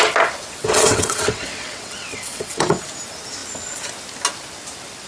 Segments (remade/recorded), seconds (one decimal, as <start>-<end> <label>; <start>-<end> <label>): 0.0-0.6 recorded; 0.6-2.8 remade; 2.8-5.1 recorded